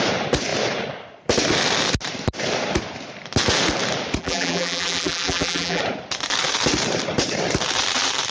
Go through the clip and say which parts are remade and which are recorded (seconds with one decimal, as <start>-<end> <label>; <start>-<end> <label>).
0.0-4.2 recorded; 4.2-5.8 remade; 5.8-8.3 recorded